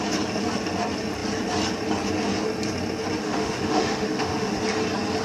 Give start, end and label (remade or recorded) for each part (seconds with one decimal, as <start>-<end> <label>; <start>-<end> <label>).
0.0-3.2 recorded; 3.2-4.6 remade; 4.6-5.2 recorded